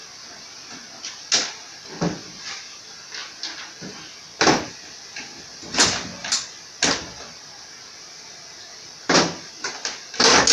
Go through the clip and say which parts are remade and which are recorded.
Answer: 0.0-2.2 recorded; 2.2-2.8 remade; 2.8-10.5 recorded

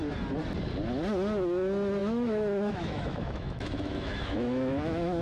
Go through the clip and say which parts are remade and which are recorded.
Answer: 0.0-2.0 recorded; 2.0-5.2 remade

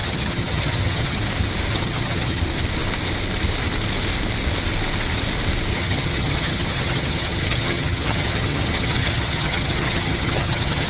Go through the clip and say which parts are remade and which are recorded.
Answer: 0.0-1.2 remade; 1.2-1.7 recorded; 1.7-2.4 remade; 2.4-5.7 recorded; 5.7-10.9 remade

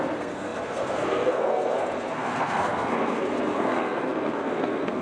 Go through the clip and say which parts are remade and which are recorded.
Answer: 0.0-5.0 remade